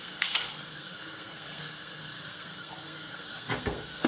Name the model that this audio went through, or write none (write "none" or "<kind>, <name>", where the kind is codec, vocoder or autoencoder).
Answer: codec, SNAC